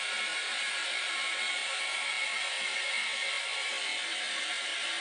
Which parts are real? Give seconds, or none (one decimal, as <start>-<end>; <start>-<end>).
0.0-0.5; 1.8-5.0